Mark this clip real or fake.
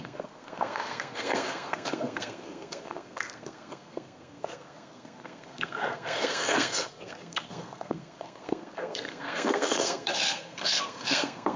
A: fake